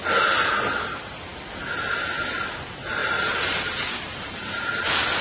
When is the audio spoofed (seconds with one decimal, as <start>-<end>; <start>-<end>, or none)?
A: 3.0-4.8